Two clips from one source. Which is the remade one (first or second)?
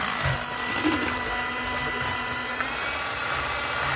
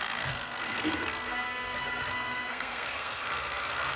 second